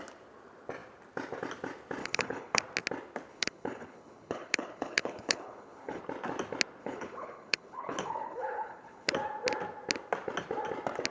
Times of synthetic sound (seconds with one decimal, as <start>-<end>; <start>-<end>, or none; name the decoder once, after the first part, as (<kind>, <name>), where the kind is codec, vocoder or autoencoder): 2.0-2.6 (codec, HILCodec); 3.3-6.0; 6.8-9.1